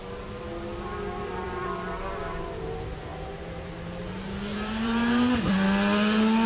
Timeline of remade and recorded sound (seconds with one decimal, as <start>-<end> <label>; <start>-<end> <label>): 0.0-3.1 recorded; 3.1-3.7 remade; 3.7-4.5 recorded; 4.5-5.5 remade; 5.5-6.5 recorded

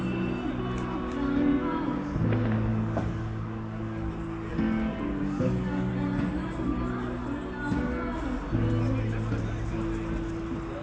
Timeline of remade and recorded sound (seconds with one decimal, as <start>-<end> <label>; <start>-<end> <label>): 0.0-2.7 recorded; 2.7-4.1 remade; 4.1-4.5 recorded; 4.5-5.9 remade; 5.9-10.8 recorded

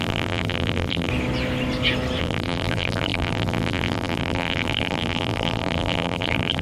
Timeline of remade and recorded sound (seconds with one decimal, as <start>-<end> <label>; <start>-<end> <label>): 0.0-1.1 remade; 1.1-2.2 recorded; 2.2-6.6 remade

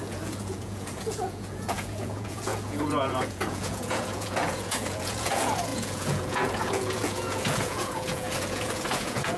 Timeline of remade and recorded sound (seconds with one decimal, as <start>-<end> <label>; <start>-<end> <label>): 0.0-9.4 remade

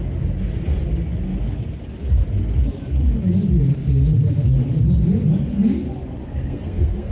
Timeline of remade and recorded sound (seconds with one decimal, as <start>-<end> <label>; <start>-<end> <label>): 0.0-6.2 recorded; 6.2-7.1 remade

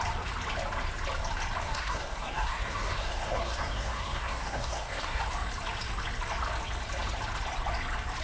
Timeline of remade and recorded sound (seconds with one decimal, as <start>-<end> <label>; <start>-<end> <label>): 0.0-1.6 recorded; 1.6-5.2 remade; 5.2-8.2 recorded

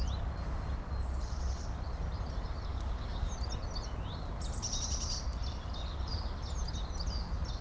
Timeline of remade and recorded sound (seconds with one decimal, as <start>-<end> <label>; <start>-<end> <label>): 0.0-2.7 recorded; 2.7-3.3 remade; 3.3-7.6 recorded

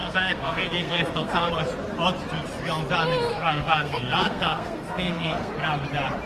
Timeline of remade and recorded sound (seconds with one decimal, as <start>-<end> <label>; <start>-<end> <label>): 0.0-1.5 remade; 1.5-3.3 recorded; 3.3-5.5 remade; 5.5-6.3 recorded